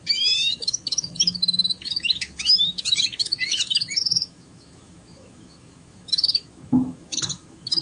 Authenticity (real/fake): fake